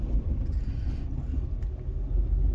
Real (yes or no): yes